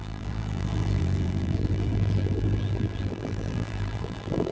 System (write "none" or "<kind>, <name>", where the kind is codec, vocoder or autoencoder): vocoder, BigVGAN v2